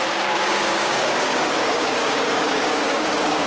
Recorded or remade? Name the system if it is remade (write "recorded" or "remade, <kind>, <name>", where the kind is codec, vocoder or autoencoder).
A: remade, codec, DAC